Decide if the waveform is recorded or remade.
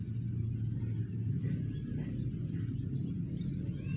recorded